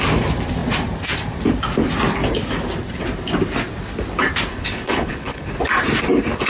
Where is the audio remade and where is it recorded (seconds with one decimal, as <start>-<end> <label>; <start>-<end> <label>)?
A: 0.0-4.5 recorded; 4.5-5.5 remade; 5.5-6.5 recorded